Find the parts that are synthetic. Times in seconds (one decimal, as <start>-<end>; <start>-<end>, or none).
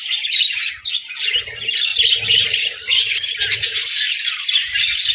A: none